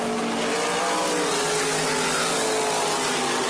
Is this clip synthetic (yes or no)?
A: no